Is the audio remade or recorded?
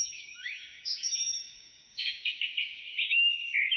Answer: remade